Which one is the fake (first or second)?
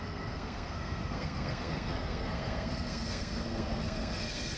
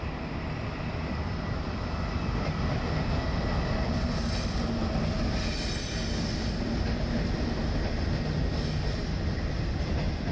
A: first